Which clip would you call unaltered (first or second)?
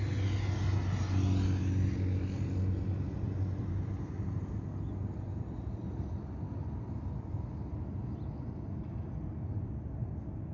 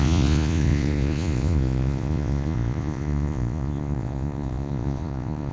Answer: first